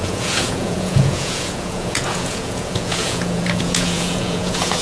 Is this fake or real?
fake